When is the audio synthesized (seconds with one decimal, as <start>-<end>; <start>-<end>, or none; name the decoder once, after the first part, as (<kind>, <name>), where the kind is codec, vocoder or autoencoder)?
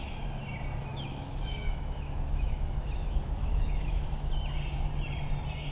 0.9-4.3 (autoencoder, DAC-VAE)